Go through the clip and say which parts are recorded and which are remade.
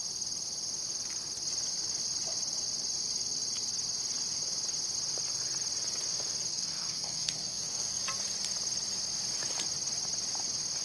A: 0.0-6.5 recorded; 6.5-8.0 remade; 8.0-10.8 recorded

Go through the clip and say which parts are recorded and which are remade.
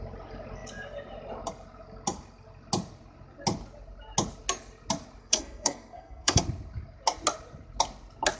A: 0.0-5.2 recorded; 5.2-6.4 remade; 6.4-8.4 recorded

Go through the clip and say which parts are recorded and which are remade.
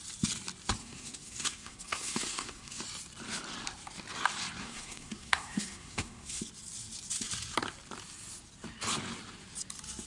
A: 0.0-0.8 recorded; 0.8-2.8 remade; 2.8-4.6 recorded; 4.6-6.4 remade; 6.4-10.1 recorded